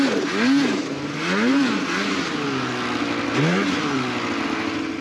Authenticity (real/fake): real